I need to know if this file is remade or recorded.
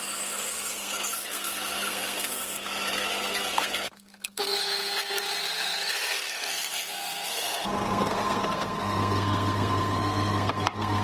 remade